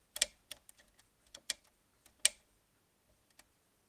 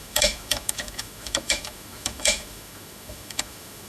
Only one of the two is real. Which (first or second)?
first